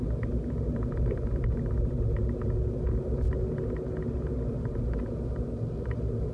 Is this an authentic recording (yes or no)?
yes